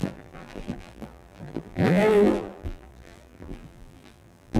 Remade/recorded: remade